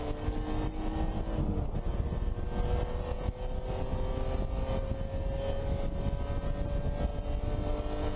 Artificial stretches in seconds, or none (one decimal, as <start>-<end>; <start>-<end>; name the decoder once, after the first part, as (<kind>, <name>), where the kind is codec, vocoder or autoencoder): none